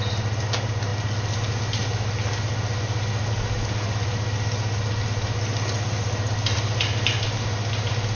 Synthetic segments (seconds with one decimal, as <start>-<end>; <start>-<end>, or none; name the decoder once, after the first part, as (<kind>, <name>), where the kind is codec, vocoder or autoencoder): none